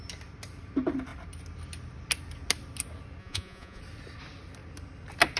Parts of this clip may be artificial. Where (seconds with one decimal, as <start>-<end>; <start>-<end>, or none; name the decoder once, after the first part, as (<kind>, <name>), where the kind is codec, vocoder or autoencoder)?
3.2-3.8 (vocoder, Vocos)